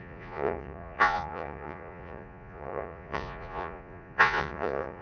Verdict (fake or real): fake